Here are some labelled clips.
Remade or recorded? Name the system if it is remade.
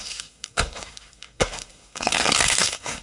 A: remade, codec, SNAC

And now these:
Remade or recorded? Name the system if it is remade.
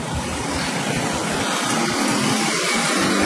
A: recorded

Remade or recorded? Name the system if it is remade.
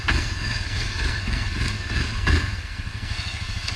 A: remade, codec, SNAC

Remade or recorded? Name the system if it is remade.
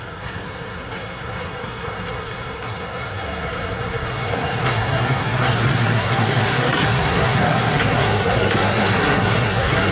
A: remade, codec, SNAC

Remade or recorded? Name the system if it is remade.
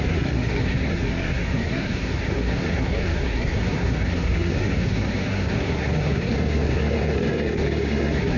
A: remade, codec, SNAC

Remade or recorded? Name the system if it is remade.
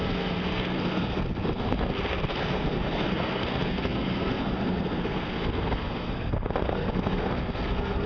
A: remade, codec, SNAC